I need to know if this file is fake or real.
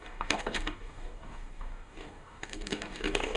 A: fake